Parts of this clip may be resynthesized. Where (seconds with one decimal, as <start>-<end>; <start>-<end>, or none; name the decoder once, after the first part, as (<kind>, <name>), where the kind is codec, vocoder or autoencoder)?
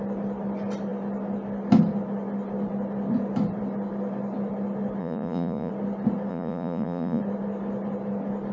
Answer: 5.0-5.7 (vocoder, Vocos); 6.3-7.2